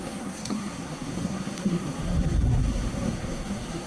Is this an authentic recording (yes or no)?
no